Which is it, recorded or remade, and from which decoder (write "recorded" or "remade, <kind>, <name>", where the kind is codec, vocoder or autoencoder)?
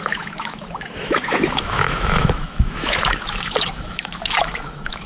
remade, autoencoder, DAC-VAE